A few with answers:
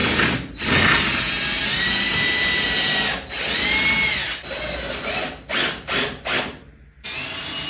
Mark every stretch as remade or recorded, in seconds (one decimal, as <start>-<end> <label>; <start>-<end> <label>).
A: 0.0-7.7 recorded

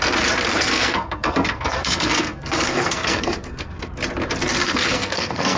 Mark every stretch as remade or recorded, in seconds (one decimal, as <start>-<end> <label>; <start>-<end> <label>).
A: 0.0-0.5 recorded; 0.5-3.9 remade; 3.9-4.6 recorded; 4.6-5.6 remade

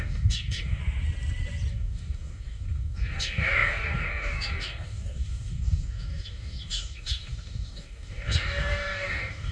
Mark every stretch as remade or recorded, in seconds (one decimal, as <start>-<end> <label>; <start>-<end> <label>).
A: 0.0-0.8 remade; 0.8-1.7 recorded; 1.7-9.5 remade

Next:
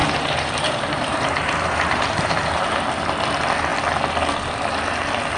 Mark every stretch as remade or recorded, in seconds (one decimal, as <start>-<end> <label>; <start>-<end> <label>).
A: 0.0-2.6 remade; 2.6-5.4 recorded

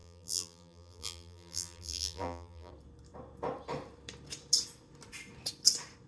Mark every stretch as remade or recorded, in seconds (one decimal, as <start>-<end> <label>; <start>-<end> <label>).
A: 0.0-2.7 remade; 2.7-6.1 recorded